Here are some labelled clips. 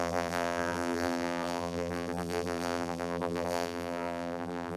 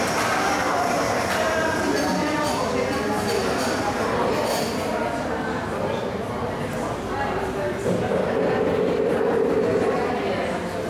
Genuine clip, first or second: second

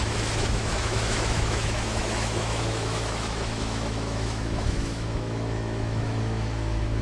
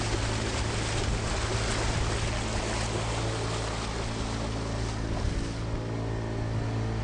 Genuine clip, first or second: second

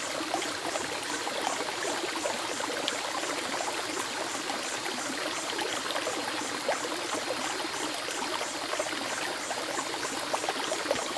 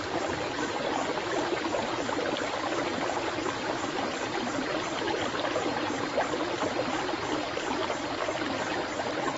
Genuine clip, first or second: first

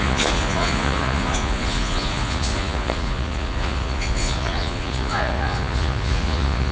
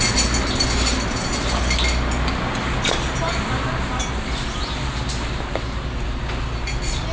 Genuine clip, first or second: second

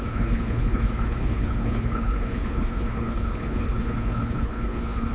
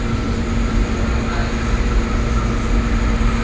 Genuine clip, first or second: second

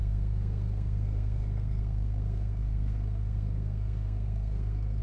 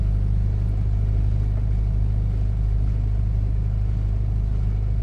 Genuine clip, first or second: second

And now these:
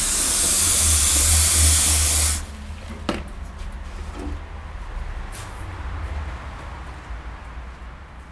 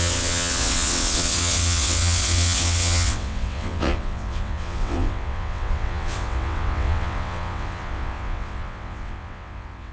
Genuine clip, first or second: first